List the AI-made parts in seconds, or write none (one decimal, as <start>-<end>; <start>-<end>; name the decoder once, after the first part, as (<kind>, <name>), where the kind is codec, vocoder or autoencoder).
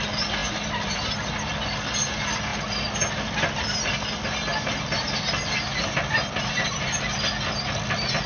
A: none